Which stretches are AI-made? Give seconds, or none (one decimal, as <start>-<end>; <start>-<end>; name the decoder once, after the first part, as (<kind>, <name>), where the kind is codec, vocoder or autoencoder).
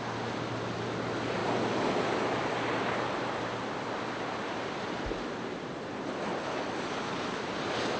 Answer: none